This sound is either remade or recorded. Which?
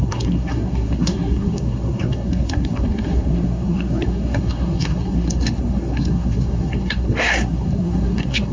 remade